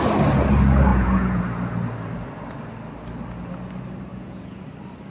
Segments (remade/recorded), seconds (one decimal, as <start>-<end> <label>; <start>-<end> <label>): 0.0-0.9 recorded; 0.9-1.4 remade; 1.4-4.1 recorded; 4.1-4.6 remade; 4.6-5.1 recorded